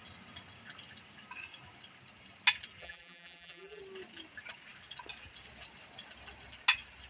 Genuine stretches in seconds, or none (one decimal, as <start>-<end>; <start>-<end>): 0.0-2.8; 3.8-7.1